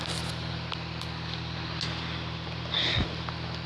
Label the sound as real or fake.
real